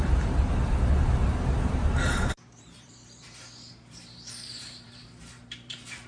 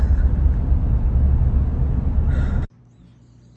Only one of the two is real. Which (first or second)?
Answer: second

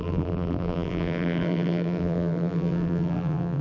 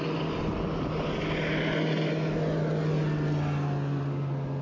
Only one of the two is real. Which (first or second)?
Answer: second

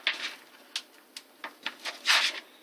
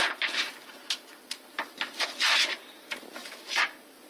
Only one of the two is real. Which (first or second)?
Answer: first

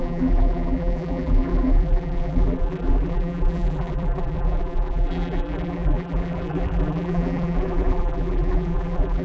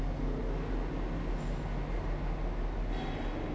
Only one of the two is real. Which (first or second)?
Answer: second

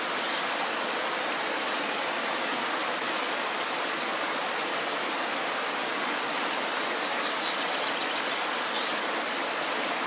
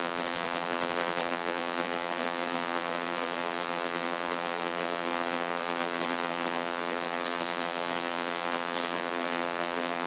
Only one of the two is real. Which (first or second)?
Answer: first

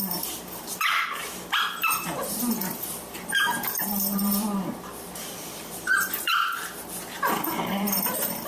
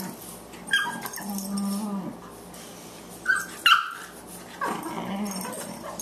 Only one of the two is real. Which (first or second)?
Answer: second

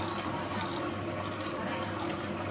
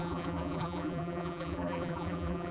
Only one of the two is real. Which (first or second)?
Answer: first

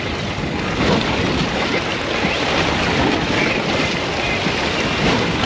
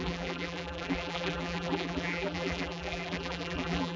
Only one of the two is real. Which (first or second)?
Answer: first